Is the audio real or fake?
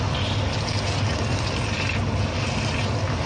real